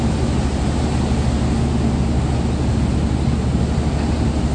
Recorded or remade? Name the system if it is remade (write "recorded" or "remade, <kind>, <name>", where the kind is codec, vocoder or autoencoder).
recorded